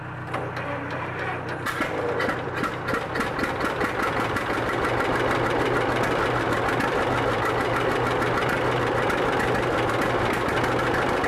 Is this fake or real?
real